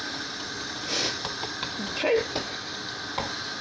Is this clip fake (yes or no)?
no